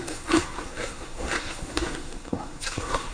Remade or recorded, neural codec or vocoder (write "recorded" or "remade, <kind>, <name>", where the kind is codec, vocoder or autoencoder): remade, codec, SNAC